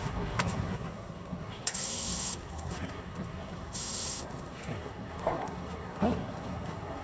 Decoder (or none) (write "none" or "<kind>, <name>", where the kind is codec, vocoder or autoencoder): codec, SNAC